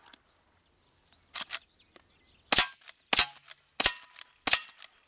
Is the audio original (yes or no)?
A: yes